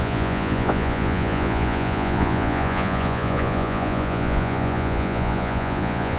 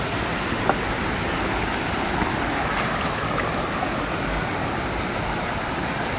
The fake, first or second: first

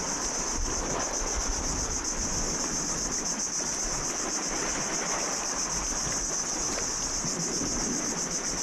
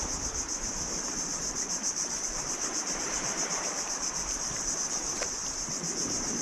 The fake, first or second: second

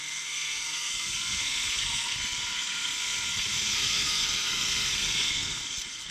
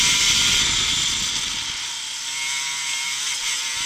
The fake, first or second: first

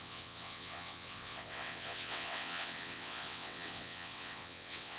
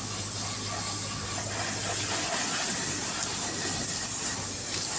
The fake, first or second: first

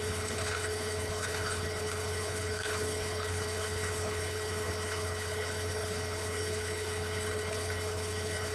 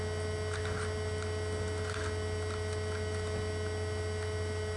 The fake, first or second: first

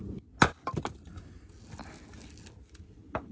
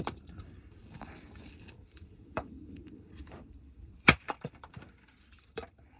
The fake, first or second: second